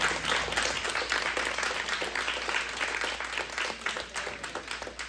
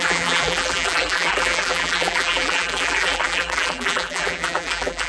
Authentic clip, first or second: first